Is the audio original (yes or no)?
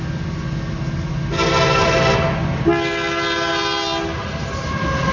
yes